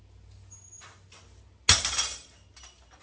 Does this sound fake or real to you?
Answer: real